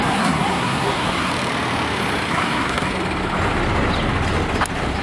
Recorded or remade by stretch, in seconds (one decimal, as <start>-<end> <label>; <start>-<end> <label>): 0.0-1.3 remade; 1.3-2.3 recorded; 2.3-2.9 remade; 2.9-5.0 recorded